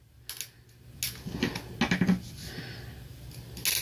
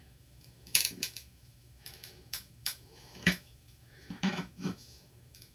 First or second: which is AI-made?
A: second